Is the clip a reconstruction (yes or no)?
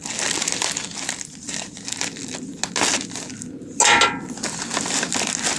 no